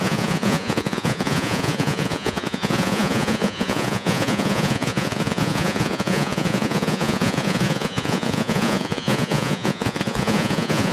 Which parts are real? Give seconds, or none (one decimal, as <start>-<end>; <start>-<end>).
none